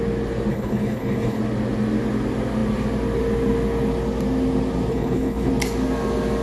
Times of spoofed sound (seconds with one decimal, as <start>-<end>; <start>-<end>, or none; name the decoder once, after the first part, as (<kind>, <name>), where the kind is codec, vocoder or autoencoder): 0.5-1.4 (codec, HILCodec); 4.9-5.5